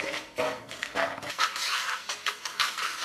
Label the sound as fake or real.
fake